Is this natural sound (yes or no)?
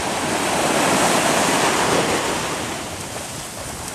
yes